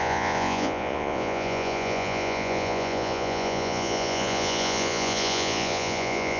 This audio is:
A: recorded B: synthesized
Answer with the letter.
B